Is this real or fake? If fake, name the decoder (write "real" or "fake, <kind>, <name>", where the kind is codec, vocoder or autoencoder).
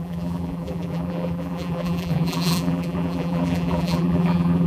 fake, vocoder, BigVGAN v2